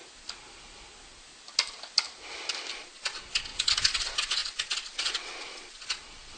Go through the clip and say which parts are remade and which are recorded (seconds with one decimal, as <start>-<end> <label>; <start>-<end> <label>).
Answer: 0.0-2.7 recorded; 2.7-6.4 remade